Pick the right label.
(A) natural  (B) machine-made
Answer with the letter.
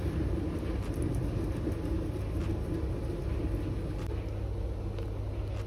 A